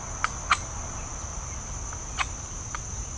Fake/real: real